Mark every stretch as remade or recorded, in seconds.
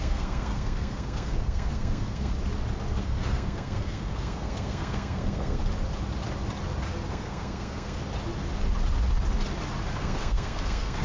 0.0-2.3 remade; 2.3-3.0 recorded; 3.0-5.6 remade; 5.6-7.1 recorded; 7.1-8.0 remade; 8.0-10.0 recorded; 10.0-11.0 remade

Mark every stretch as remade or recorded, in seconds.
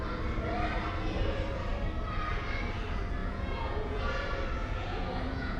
0.0-3.2 recorded; 3.2-4.0 remade; 4.0-4.6 recorded; 4.6-5.6 remade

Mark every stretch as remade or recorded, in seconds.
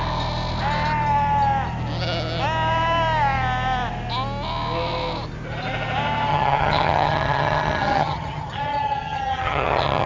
0.0-6.3 recorded; 6.3-10.1 remade